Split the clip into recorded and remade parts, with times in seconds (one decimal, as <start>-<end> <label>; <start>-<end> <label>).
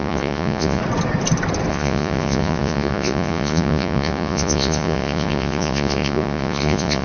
0.0-0.8 remade; 0.8-1.7 recorded; 1.7-7.0 remade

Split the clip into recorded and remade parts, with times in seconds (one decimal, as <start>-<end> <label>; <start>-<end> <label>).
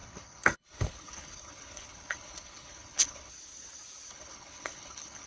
0.0-3.3 remade; 3.3-4.1 recorded; 4.1-5.3 remade